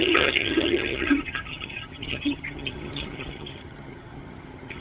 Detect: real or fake fake